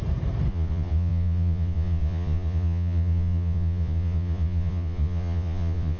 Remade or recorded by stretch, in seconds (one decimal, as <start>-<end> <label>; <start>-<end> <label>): 0.0-0.5 recorded; 0.5-6.0 remade